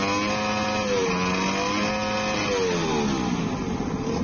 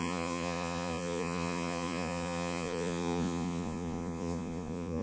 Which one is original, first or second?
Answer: first